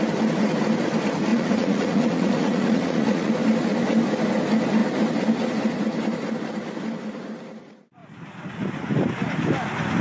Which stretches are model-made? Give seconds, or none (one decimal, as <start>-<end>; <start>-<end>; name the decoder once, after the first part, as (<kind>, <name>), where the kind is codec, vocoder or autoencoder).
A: 1.3-3.3 (vocoder, Vocos)